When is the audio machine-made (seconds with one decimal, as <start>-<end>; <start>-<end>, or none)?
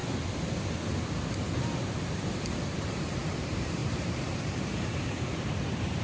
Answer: 2.1-6.0